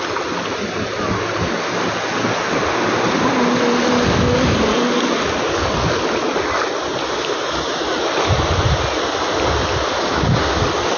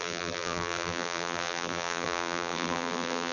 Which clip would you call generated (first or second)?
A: second